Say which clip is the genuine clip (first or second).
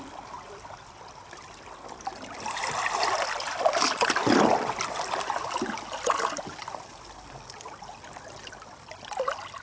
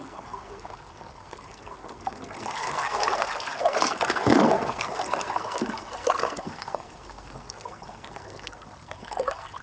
first